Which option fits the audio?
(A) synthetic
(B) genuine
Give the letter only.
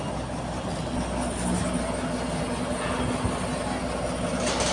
B